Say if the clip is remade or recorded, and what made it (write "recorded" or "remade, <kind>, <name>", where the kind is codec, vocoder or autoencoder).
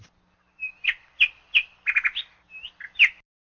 recorded